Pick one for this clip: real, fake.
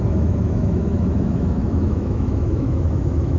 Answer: fake